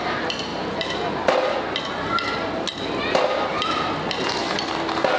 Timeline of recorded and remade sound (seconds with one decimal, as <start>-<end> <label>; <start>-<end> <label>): 0.0-5.2 recorded